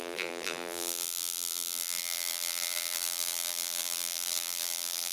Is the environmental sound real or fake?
fake